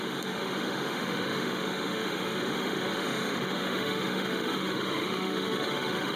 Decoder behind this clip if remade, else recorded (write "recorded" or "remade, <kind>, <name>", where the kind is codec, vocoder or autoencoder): remade, autoencoder, DAC-VAE